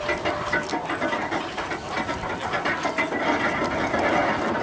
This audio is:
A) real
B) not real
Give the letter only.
A